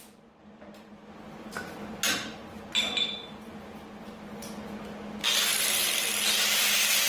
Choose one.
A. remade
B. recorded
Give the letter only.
B